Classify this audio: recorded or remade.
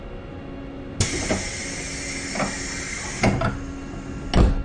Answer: recorded